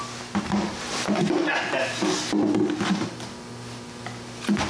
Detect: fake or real real